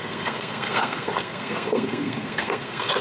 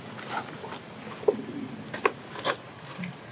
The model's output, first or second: first